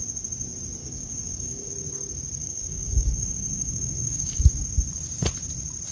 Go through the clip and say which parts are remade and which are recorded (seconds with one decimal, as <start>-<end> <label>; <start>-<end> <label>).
0.0-0.8 recorded; 0.8-1.7 remade; 1.7-2.4 recorded; 2.4-4.4 remade; 4.4-5.9 recorded